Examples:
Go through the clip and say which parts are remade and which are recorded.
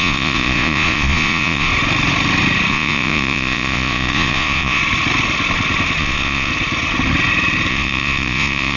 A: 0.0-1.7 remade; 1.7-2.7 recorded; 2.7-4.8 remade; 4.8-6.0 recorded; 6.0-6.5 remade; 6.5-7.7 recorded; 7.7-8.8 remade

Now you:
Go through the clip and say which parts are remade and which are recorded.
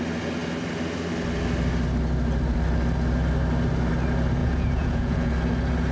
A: 0.0-4.4 recorded; 4.4-5.3 remade; 5.3-5.9 recorded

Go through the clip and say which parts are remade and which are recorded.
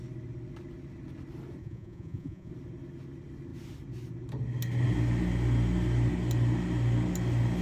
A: 0.0-1.6 recorded; 1.6-2.5 remade; 2.5-7.6 recorded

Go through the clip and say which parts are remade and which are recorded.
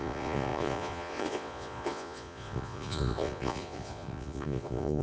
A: 0.0-5.0 remade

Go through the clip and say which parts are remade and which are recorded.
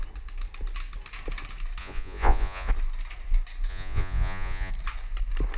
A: 0.0-1.8 recorded; 1.8-2.7 remade; 2.7-3.7 recorded; 3.7-4.7 remade; 4.7-5.6 recorded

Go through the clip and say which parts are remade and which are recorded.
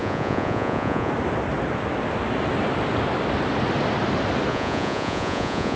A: 0.0-1.1 remade; 1.1-4.5 recorded; 4.5-5.8 remade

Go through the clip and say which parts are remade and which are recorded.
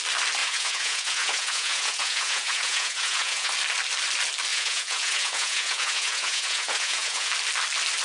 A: 0.0-0.4 recorded; 0.4-3.5 remade; 3.5-4.5 recorded; 4.5-7.3 remade; 7.3-8.0 recorded